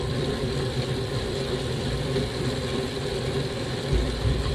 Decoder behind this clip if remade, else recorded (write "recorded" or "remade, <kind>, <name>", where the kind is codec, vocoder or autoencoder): remade, vocoder, BigVGAN v2